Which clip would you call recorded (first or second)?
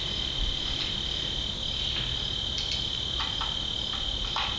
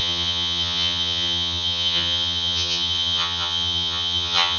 first